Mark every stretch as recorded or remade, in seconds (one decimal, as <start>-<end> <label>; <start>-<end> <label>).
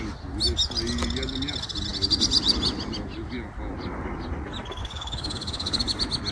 0.0-4.8 recorded; 4.8-5.8 remade; 5.8-6.3 recorded